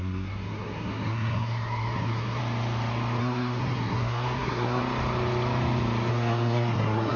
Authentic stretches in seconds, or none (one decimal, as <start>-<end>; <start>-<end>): 2.4-3.2; 4.8-6.1